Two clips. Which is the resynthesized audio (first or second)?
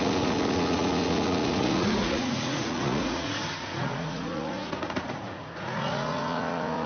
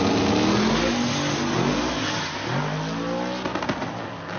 first